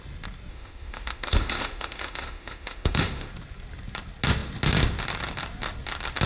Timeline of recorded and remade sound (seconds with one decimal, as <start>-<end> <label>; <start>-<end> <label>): 0.0-0.5 recorded; 0.5-3.3 remade; 3.3-6.3 recorded